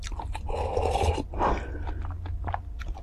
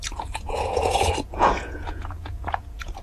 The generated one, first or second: second